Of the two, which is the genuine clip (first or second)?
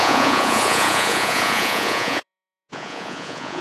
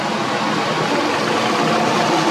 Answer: second